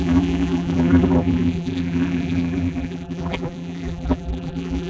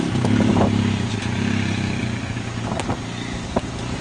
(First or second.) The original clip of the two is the second